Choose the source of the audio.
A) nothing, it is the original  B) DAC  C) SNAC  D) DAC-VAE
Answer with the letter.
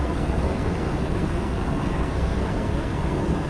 C